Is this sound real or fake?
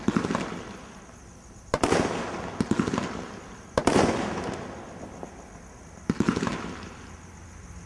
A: real